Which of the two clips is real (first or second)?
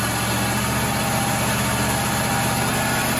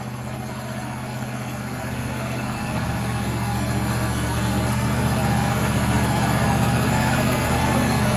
first